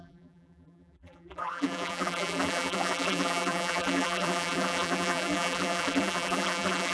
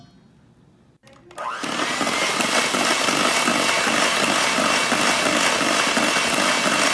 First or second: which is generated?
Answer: first